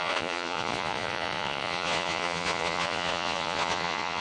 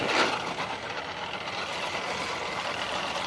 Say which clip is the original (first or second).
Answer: second